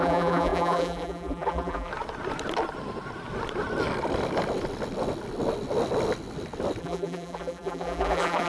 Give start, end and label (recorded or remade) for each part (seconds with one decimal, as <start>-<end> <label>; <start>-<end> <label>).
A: 0.0-1.9 remade; 1.9-6.8 recorded; 6.8-8.5 remade